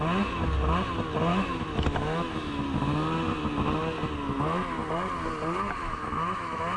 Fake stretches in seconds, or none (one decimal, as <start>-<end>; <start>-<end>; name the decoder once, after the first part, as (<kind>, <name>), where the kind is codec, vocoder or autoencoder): 1.3-2.8 (autoencoder, DAC-VAE); 5.8-6.8